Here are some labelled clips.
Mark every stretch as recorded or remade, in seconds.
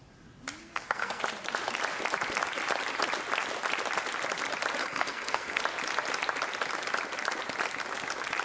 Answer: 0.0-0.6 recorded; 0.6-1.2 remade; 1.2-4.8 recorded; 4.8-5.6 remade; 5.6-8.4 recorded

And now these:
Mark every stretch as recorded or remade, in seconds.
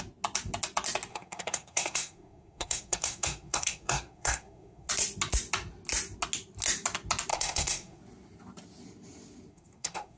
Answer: 0.0-1.1 recorded; 1.1-4.9 remade; 4.9-7.3 recorded; 7.3-8.0 remade; 8.0-9.5 recorded; 9.5-10.2 remade